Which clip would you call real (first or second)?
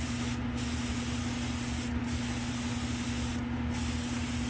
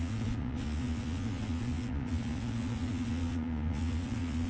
first